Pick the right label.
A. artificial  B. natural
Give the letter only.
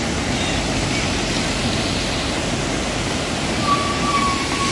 B